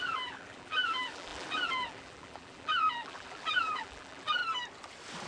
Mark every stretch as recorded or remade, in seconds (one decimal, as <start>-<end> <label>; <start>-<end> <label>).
0.0-4.4 remade; 4.4-5.3 recorded